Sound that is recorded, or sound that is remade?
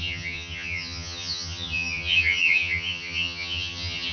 remade